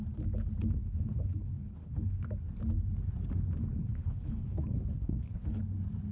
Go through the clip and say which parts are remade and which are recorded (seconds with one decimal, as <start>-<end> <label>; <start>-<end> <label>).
0.0-0.8 recorded; 0.8-2.2 remade; 2.2-3.8 recorded; 3.8-5.6 remade; 5.6-6.1 recorded